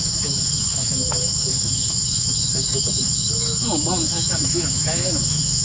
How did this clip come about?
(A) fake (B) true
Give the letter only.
A